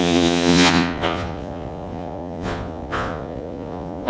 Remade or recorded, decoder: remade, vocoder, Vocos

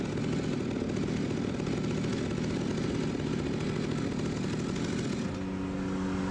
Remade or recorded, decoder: recorded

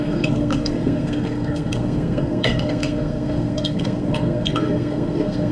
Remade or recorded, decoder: remade, codec, SNAC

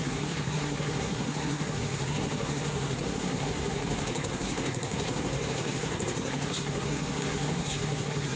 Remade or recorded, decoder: remade, codec, SNAC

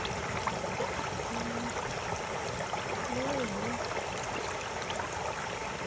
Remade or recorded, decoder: recorded